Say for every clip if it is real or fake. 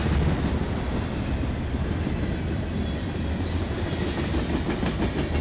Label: real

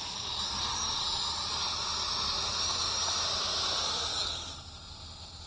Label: real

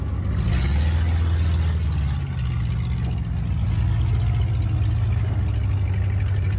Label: real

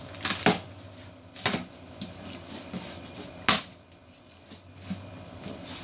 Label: real